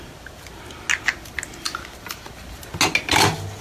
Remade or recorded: recorded